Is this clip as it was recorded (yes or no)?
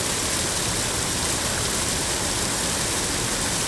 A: yes